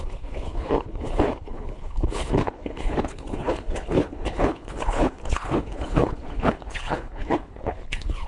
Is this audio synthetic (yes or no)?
yes